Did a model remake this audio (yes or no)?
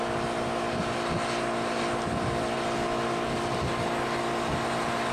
no